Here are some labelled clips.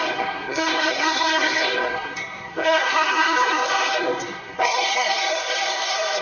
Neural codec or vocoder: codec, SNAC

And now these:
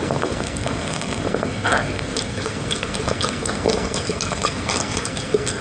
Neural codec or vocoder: codec, SNAC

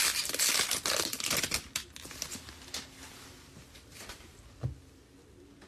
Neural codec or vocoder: none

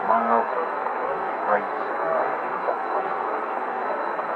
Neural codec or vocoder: codec, SNAC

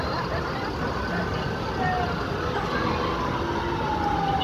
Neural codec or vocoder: none